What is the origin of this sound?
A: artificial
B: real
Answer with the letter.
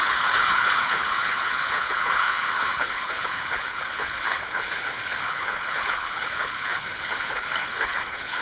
A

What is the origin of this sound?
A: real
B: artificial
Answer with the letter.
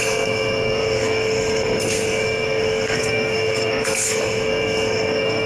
B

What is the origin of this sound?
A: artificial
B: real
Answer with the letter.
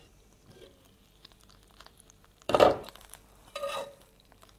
A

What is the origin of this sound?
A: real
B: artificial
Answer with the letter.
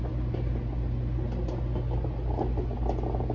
A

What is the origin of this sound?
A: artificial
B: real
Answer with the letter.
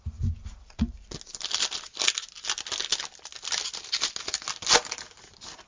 B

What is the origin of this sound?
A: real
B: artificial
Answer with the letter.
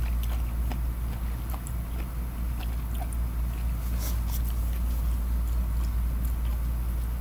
A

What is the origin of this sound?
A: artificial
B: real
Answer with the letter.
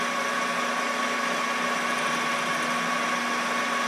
B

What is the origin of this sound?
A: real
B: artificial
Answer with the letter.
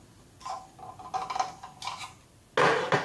A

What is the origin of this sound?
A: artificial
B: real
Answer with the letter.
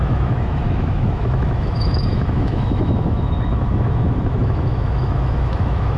A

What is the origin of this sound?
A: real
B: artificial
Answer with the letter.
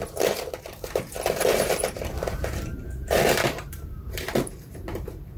B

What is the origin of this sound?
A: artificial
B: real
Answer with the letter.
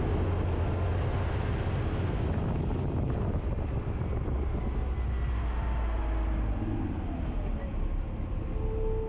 B